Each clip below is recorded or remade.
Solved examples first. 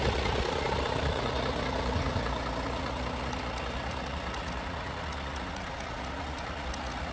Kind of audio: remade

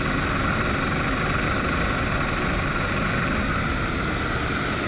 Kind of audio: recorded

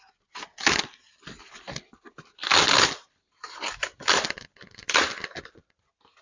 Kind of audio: recorded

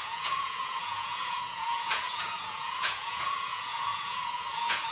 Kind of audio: remade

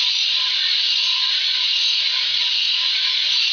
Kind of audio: remade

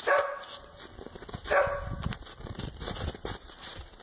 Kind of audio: recorded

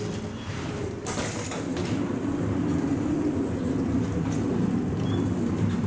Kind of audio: recorded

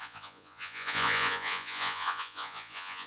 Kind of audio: remade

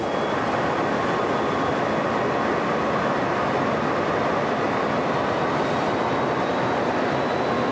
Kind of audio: recorded